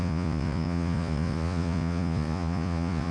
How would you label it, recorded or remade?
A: remade